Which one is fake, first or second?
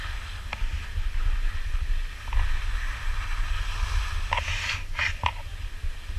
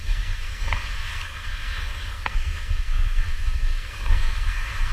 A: second